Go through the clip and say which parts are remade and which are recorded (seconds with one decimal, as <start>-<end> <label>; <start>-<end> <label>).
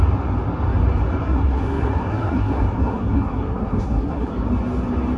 0.0-1.2 recorded; 1.2-4.3 remade; 4.3-5.2 recorded